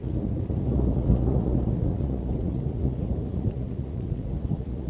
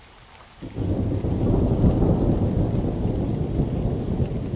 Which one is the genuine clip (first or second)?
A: second